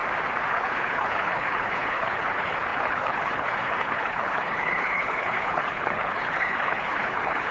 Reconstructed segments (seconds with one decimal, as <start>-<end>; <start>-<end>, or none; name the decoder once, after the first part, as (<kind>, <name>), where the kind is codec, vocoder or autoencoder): 0.5-7.5 (codec, HILCodec)